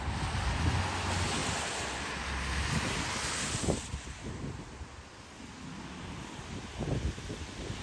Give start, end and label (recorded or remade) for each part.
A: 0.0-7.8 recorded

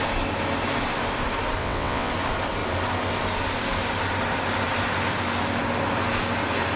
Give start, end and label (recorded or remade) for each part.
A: 0.0-1.6 recorded; 1.6-2.1 remade; 2.1-6.8 recorded

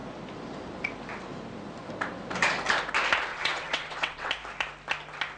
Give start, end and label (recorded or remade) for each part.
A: 0.0-3.3 recorded; 3.3-4.3 remade; 4.3-5.4 recorded

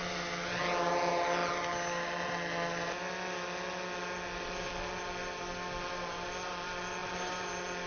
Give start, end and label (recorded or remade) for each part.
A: 0.0-7.9 recorded